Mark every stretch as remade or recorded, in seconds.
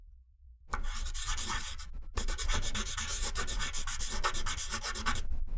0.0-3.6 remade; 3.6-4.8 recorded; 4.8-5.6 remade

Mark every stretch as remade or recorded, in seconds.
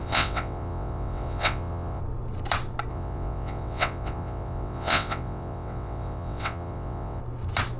0.0-2.0 remade; 2.0-2.9 recorded; 2.9-7.2 remade; 7.2-7.8 recorded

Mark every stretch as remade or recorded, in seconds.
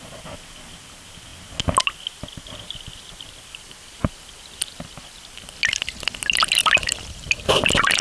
0.0-8.0 recorded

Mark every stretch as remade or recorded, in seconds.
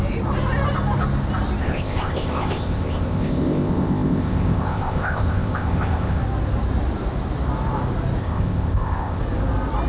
0.0-1.6 recorded; 1.6-6.2 remade; 6.2-8.2 recorded; 8.2-9.2 remade; 9.2-9.9 recorded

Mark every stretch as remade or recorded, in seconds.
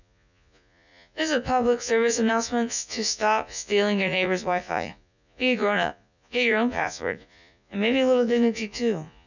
0.0-9.3 remade